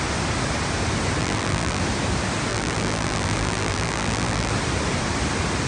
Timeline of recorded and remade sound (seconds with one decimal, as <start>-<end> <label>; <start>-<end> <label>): 0.0-1.2 recorded; 1.2-1.8 remade; 1.8-2.5 recorded; 2.5-4.5 remade; 4.5-5.7 recorded